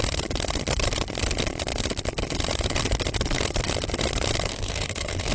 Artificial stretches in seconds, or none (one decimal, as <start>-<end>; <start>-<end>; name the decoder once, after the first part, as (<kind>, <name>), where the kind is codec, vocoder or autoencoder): 4.5-5.3 (codec, SNAC)